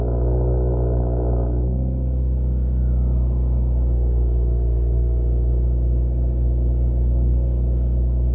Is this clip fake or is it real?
fake